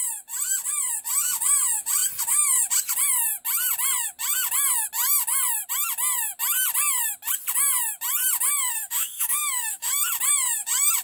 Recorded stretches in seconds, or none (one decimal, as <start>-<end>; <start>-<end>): 0.0-8.6; 9.9-11.0